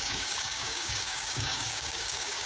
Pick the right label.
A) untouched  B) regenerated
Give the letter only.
B